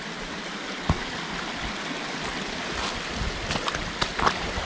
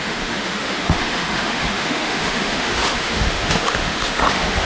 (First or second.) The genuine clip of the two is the first